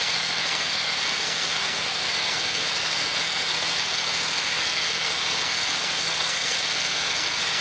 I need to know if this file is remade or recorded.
remade